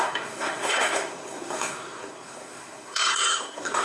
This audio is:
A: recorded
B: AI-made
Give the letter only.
B